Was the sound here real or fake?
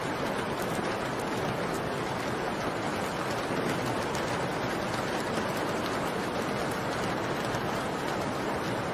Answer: real